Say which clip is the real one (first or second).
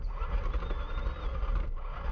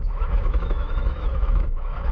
first